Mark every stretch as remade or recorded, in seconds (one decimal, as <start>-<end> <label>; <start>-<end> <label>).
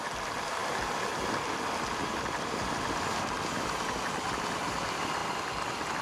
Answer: 0.0-6.0 recorded